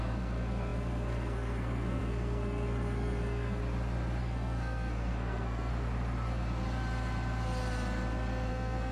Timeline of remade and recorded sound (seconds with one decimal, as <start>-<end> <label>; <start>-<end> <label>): 0.0-3.6 remade; 3.6-4.2 recorded; 4.2-5.7 remade; 5.7-8.5 recorded; 8.5-8.9 remade